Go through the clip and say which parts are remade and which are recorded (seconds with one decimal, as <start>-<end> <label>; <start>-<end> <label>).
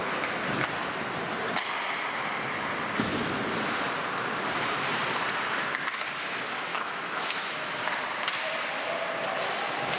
0.0-6.7 recorded; 6.7-7.9 remade; 7.9-10.0 recorded